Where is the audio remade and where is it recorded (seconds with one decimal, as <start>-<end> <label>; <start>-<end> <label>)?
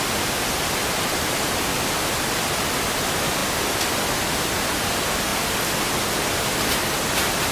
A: 0.0-7.5 recorded